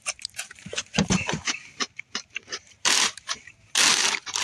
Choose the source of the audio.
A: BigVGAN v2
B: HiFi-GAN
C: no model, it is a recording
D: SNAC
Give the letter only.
A